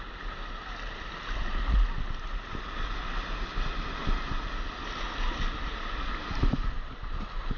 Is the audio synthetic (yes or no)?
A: no